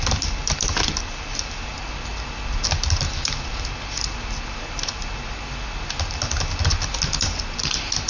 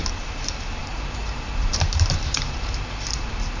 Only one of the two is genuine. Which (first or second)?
first